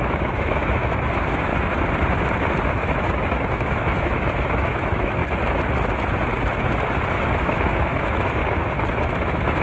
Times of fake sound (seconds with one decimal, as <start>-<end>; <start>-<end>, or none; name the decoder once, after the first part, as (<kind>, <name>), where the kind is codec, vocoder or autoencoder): 0.0-1.5 (autoencoder, DAC-VAE); 2.7-5.2; 7.4-8.4; 9.0-9.6